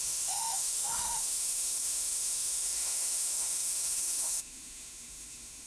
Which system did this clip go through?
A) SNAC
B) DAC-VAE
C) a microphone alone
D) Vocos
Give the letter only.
B